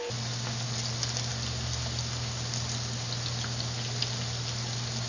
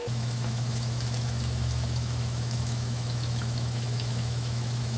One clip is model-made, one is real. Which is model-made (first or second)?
second